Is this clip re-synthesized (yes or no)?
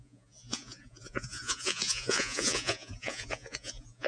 yes